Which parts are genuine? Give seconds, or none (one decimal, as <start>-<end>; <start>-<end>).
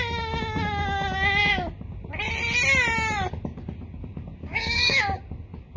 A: 0.0-4.4; 5.0-5.8